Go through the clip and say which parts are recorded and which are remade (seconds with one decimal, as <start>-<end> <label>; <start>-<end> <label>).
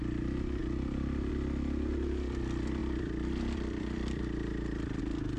0.0-2.8 recorded; 2.8-5.0 remade; 5.0-5.4 recorded